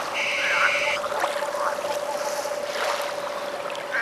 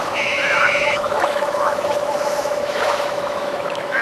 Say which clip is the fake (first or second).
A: second